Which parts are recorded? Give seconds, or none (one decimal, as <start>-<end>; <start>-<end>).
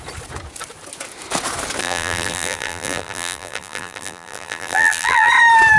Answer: 0.0-1.8; 5.3-5.8